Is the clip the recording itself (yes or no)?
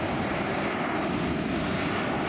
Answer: no